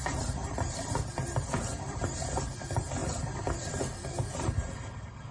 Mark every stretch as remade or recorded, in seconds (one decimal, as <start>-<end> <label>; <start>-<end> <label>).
0.0-5.3 recorded